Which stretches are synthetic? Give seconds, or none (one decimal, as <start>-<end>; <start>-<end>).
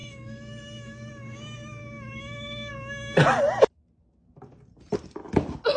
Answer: 0.0-1.1; 1.8-2.7